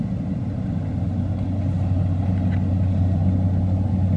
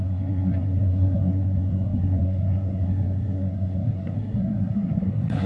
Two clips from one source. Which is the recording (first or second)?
first